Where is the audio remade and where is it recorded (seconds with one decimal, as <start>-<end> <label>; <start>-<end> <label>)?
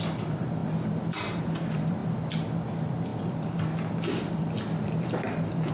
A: 0.0-2.0 remade; 2.0-2.7 recorded; 2.7-5.7 remade